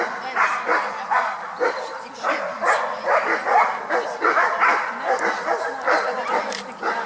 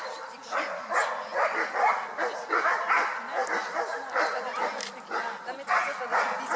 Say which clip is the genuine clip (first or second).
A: second